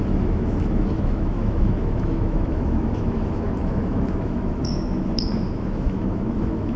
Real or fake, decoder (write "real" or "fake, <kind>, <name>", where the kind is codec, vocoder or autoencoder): fake, autoencoder, DAC-VAE